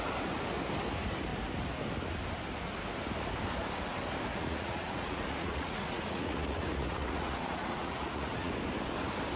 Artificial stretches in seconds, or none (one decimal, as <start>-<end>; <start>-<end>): 4.3-8.5